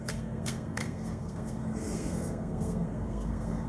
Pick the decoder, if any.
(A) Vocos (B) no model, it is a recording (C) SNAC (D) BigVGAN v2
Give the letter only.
C